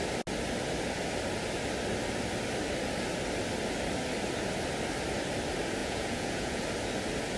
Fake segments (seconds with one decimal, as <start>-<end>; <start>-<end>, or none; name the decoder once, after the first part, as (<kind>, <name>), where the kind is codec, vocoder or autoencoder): 5.8-6.6 (vocoder, Vocos)